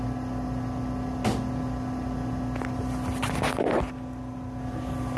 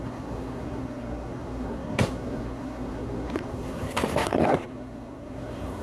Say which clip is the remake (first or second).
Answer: second